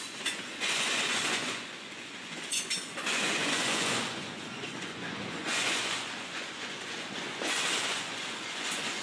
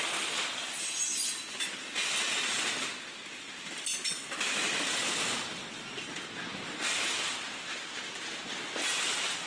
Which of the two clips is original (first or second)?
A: second